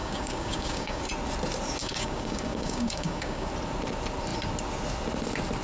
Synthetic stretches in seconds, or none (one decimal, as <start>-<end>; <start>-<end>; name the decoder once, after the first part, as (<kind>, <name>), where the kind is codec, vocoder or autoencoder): 0.0-1.0 (codec, DAC); 1.8-3.5